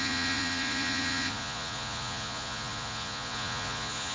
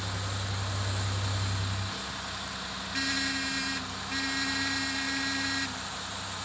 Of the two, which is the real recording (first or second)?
second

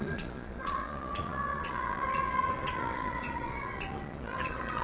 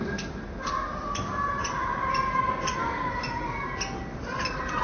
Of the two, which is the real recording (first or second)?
second